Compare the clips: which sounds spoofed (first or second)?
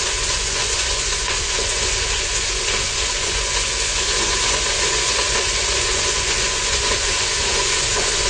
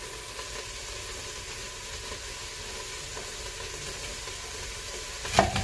first